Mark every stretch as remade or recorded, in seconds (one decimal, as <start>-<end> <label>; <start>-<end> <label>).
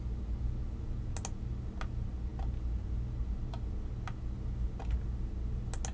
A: 0.0-5.9 recorded